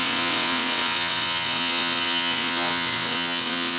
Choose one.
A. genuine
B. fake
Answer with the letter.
B